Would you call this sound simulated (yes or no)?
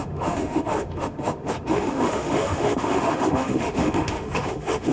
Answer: yes